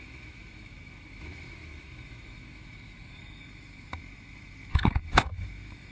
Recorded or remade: remade